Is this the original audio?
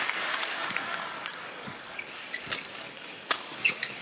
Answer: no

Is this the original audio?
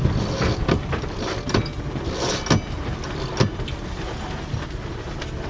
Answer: yes